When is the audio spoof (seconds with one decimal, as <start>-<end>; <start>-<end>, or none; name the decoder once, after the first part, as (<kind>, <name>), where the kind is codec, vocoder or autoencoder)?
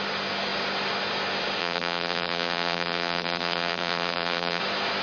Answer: 1.6-4.6 (vocoder, BigVGAN v2)